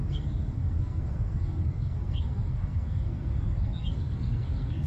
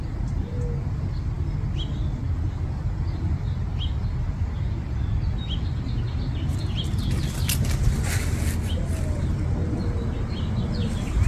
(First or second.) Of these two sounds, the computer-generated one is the first